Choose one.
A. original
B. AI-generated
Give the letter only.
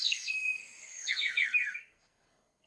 B